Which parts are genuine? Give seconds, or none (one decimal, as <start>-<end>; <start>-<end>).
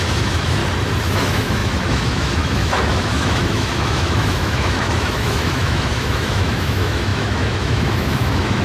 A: 0.6-1.1